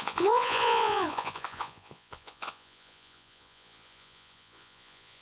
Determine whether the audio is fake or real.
fake